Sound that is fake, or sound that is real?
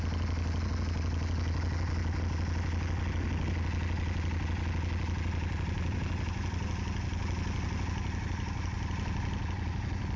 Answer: real